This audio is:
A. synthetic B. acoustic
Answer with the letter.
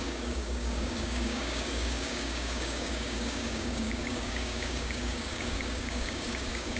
A